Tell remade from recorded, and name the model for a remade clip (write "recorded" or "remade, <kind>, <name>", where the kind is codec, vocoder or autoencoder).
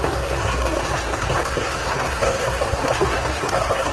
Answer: remade, codec, SNAC